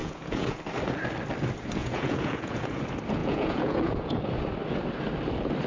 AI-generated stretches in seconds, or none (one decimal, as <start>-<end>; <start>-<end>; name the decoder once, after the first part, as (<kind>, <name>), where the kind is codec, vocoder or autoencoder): 0.0-0.6 (vocoder, Vocos); 1.8-2.8; 3.2-4.2